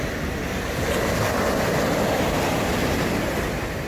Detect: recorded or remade recorded